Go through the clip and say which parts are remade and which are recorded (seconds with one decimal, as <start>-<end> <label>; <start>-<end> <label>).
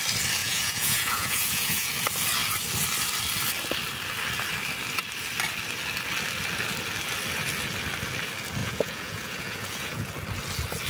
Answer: 0.0-0.4 recorded; 0.4-1.9 remade; 1.9-8.6 recorded; 8.6-10.1 remade; 10.1-10.9 recorded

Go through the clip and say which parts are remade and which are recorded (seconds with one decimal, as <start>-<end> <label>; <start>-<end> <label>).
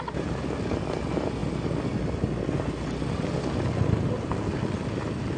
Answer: 0.0-5.4 recorded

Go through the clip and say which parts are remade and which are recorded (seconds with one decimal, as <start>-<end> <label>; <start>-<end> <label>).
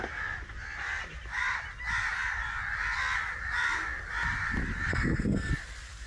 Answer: 0.0-4.9 recorded; 4.9-5.5 remade; 5.5-6.1 recorded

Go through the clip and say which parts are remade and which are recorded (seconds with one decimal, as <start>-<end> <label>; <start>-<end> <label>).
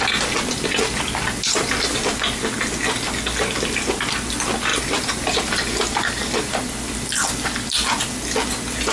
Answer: 0.0-4.7 recorded; 4.7-6.5 remade; 6.5-8.9 recorded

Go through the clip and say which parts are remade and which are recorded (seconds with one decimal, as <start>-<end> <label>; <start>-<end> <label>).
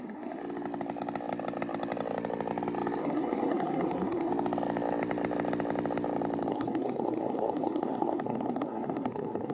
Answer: 0.0-0.4 remade; 0.4-3.0 recorded; 3.0-4.3 remade; 4.3-6.5 recorded; 6.5-9.5 remade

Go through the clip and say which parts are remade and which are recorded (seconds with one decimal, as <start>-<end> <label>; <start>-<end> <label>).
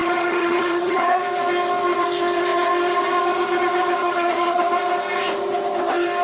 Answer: 0.0-1.2 remade; 1.2-4.0 recorded; 4.0-4.6 remade; 4.6-6.2 recorded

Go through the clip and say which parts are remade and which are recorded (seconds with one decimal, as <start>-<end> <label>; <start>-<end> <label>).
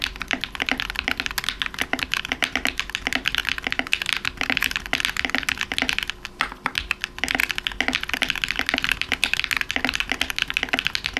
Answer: 0.0-11.2 recorded